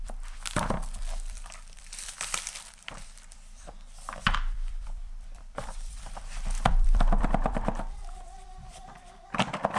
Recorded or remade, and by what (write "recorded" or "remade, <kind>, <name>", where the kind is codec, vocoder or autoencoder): remade, vocoder, BigVGAN v2